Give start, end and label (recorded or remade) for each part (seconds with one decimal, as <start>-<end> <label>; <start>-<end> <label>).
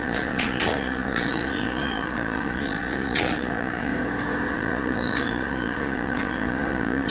0.0-3.9 remade; 3.9-4.5 recorded; 4.5-7.1 remade